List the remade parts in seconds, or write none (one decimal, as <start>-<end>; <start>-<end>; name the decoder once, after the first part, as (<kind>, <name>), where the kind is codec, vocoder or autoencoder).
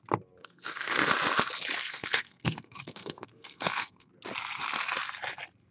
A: 0.4-1.1 (codec, SNAC); 1.8-4.1